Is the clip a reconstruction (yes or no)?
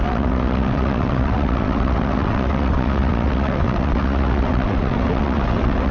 yes